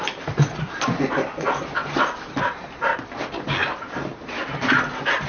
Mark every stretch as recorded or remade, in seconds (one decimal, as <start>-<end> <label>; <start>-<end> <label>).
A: 0.0-5.3 recorded